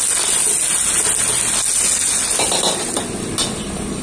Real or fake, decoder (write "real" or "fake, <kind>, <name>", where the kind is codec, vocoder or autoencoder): real